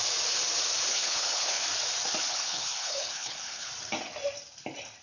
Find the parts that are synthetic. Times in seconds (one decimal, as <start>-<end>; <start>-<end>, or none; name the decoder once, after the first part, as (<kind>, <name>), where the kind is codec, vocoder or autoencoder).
0.9-1.6 (codec, HILCodec); 2.3-3.7

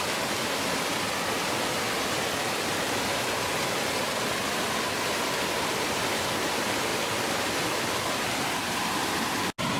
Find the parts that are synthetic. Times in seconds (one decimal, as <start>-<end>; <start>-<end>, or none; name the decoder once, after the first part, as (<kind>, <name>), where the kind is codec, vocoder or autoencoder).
6.9-7.9 (vocoder, BigVGAN v2)

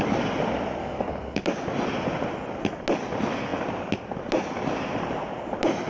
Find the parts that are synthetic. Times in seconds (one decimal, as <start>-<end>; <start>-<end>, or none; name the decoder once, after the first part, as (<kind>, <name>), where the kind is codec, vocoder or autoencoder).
0.8-1.5 (codec, DAC)